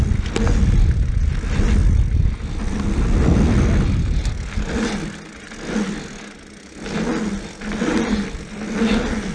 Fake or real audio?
real